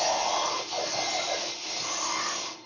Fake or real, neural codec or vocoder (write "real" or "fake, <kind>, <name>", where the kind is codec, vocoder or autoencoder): real